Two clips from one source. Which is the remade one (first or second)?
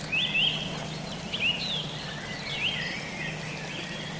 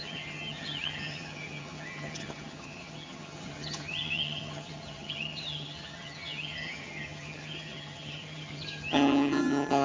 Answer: second